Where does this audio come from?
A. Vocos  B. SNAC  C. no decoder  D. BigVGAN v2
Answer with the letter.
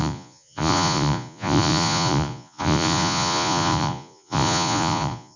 A